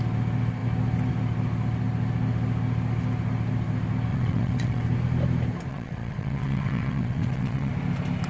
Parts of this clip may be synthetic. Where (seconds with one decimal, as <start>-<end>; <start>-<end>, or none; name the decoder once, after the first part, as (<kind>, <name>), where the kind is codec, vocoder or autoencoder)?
4.1-4.8 (vocoder, WaveNeXt); 5.7-7.7